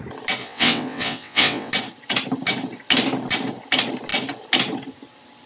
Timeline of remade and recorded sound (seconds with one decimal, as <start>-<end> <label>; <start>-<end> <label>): 0.0-0.4 recorded; 0.4-1.7 remade; 1.7-5.5 recorded